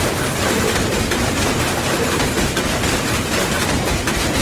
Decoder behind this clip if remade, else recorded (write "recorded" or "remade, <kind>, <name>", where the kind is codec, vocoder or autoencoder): remade, vocoder, BigVGAN v2